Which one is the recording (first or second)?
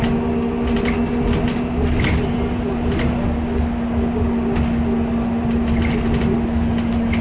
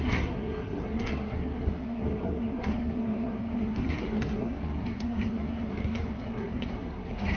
first